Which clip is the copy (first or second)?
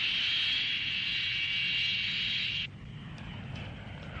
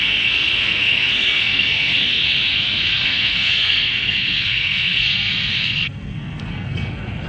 second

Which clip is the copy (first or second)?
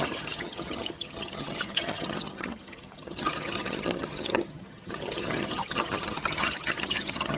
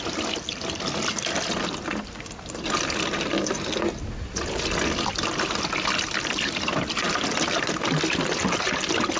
first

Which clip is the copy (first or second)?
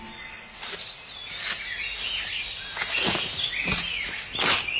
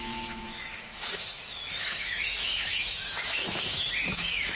second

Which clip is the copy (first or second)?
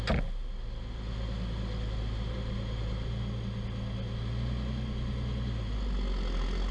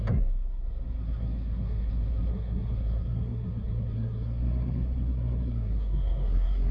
second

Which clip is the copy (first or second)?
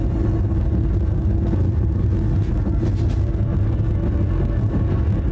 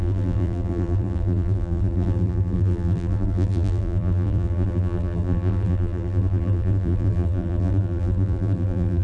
second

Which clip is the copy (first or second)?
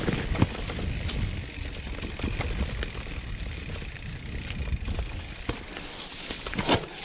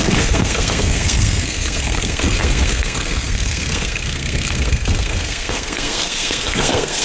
second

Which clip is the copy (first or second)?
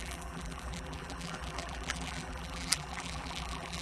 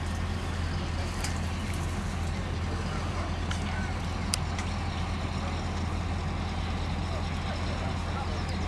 first